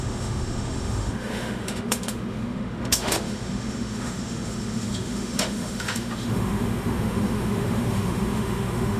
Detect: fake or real fake